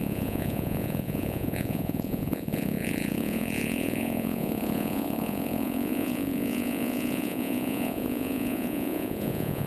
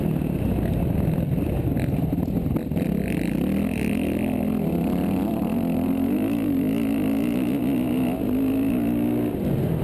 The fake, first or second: first